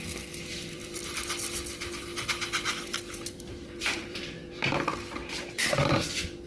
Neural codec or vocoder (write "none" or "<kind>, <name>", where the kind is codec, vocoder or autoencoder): vocoder, BigVGAN v2